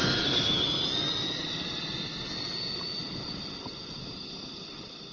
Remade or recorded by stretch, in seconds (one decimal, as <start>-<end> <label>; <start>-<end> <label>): 0.0-5.1 recorded